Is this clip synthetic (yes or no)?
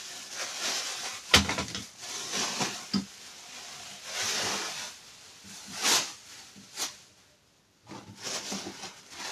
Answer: no